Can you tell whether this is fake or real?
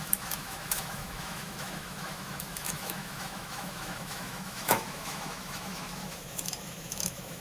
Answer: fake